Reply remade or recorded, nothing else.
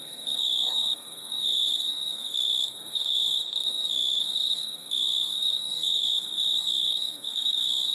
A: remade